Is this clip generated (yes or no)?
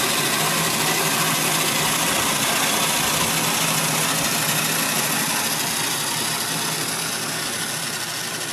no